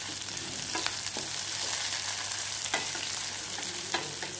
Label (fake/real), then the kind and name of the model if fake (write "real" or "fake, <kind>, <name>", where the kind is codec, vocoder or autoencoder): real